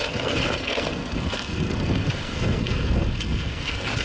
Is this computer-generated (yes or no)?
yes